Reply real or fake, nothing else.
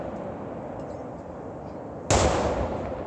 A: real